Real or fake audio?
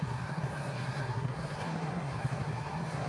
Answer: fake